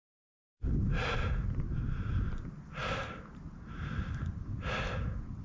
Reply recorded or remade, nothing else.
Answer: recorded